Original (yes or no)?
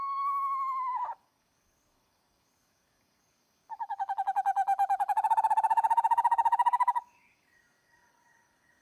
no